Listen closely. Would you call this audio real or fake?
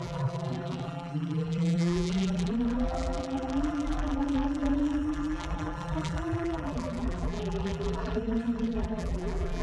fake